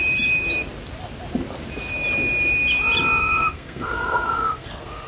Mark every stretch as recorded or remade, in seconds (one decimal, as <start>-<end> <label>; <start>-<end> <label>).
0.0-3.2 recorded; 3.2-5.1 remade